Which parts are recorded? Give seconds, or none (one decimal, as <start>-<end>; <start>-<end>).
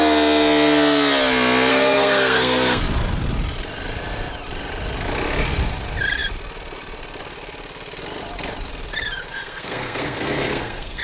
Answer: 0.0-1.7; 2.8-9.3